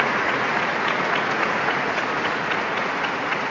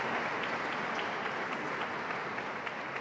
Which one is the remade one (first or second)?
first